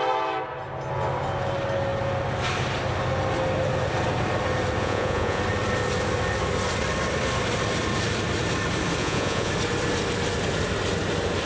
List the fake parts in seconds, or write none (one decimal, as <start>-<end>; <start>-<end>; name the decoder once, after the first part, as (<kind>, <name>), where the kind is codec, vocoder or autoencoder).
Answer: 4.8-5.4 (vocoder, Vocos); 9.0-9.5